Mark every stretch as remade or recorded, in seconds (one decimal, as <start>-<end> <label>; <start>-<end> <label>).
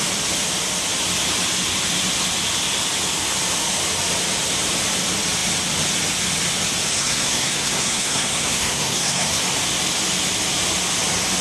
0.0-6.9 recorded; 6.9-9.4 remade; 9.4-11.4 recorded